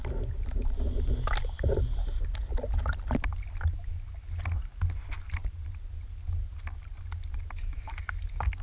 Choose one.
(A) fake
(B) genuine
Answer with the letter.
B